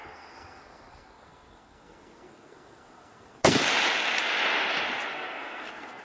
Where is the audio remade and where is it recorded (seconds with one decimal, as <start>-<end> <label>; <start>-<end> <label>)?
0.0-3.6 remade; 3.6-5.1 recorded; 5.1-6.0 remade